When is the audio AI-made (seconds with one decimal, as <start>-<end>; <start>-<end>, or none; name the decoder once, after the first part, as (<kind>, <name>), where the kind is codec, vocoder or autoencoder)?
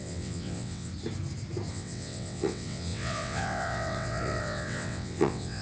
0.0-0.9 (vocoder, WaveNeXt); 1.7-5.6